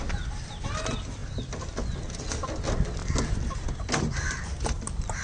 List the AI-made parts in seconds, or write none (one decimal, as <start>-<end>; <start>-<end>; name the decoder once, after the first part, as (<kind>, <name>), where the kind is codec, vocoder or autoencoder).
none